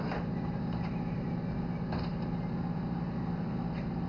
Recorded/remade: recorded